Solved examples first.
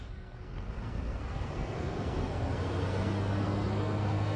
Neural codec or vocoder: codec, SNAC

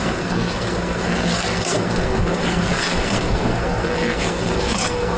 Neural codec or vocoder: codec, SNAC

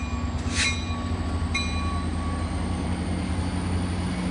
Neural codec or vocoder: none